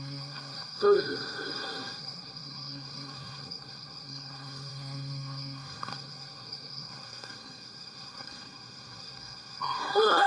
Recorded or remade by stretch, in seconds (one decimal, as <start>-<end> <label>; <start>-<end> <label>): 0.0-10.3 remade